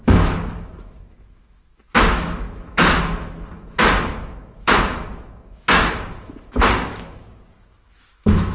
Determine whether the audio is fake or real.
fake